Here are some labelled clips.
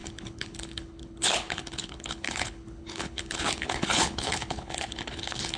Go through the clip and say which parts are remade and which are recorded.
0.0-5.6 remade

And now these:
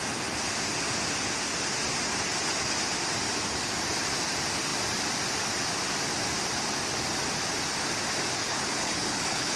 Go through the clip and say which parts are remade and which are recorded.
0.0-8.4 recorded; 8.4-9.6 remade

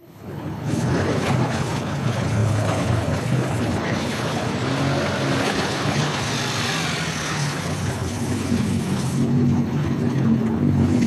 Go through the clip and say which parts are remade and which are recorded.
0.0-4.5 remade; 4.5-5.4 recorded; 5.4-6.3 remade; 6.3-7.2 recorded; 7.2-11.1 remade

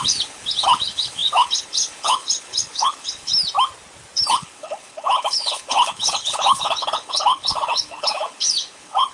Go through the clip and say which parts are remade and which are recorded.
0.0-3.3 remade; 3.3-4.3 recorded; 4.3-9.1 remade

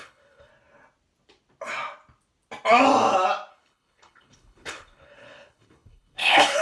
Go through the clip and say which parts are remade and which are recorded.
0.0-0.5 remade; 0.5-3.5 recorded; 3.5-6.6 remade